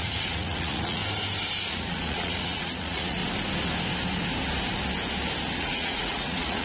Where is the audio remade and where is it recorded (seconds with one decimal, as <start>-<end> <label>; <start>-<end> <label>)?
0.0-1.0 remade; 1.0-1.7 recorded; 1.7-3.2 remade; 3.2-5.6 recorded; 5.6-6.6 remade